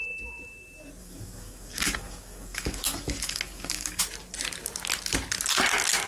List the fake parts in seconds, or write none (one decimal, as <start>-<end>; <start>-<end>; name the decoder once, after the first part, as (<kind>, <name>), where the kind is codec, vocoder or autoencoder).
1.0-4.0 (codec, DAC)